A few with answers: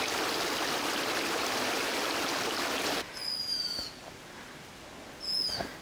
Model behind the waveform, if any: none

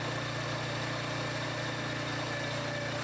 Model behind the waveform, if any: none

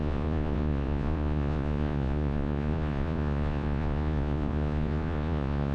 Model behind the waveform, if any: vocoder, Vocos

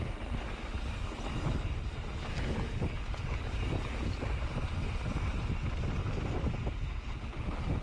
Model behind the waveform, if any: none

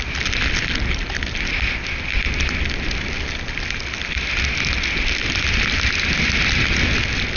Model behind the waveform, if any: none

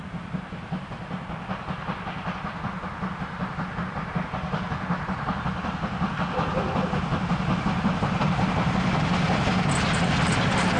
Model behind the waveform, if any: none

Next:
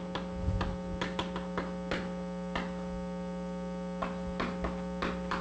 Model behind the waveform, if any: none